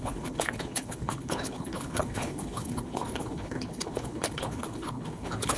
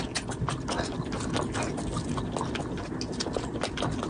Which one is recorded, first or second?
second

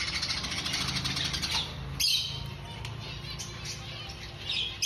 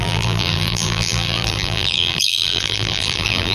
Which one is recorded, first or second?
first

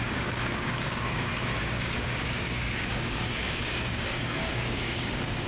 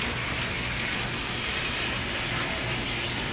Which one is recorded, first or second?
second